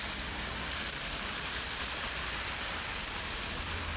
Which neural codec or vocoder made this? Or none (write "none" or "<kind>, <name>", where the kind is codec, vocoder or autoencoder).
vocoder, BigVGAN v2